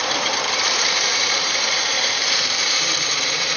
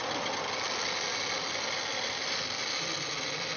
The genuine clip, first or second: second